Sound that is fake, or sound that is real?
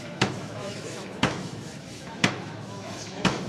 fake